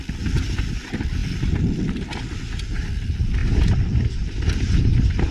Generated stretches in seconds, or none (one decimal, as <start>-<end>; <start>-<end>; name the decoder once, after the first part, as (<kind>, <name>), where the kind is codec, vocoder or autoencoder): none